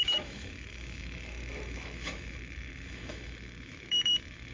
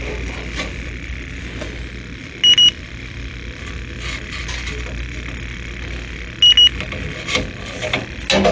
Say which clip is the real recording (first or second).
second